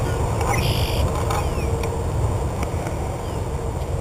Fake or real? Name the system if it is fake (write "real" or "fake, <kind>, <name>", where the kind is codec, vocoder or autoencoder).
real